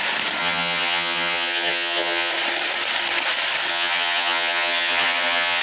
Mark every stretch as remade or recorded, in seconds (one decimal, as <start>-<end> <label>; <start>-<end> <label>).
0.0-0.4 recorded; 0.4-2.3 remade; 2.3-3.7 recorded; 3.7-5.6 remade